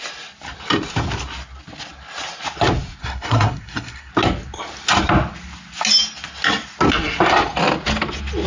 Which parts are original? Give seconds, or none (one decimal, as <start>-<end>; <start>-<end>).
0.0-3.0; 4.1-8.5